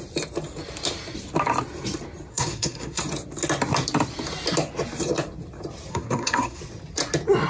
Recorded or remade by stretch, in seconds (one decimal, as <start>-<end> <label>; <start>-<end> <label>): 0.0-2.3 recorded; 2.3-3.0 remade; 3.0-5.9 recorded; 5.9-6.6 remade; 6.6-7.5 recorded

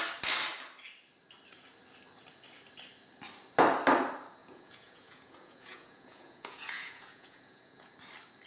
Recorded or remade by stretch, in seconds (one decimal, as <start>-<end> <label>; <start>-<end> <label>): 0.0-4.4 recorded; 4.4-7.9 remade; 7.9-8.5 recorded

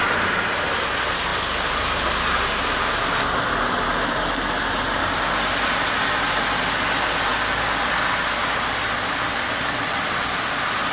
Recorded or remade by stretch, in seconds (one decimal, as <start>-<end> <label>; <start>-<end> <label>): 0.0-10.9 recorded

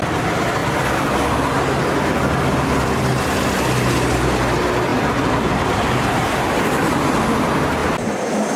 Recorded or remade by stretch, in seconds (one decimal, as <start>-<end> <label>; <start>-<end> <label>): 0.0-4.9 recorded; 4.9-6.6 remade; 6.6-7.8 recorded; 7.8-8.6 remade

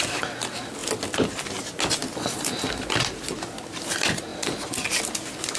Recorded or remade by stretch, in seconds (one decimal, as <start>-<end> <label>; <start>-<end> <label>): 0.0-5.6 recorded

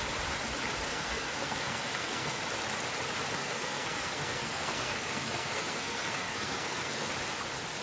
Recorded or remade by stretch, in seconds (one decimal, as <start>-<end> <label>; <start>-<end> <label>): 0.0-0.9 recorded; 0.9-2.4 remade; 2.4-3.4 recorded; 3.4-7.1 remade; 7.1-7.8 recorded

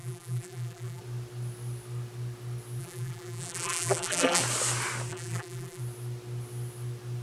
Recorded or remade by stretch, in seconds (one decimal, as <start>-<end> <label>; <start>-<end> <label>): 0.0-1.0 remade; 1.0-2.8 recorded; 2.8-4.4 remade; 4.4-5.1 recorded; 5.1-5.8 remade; 5.8-7.2 recorded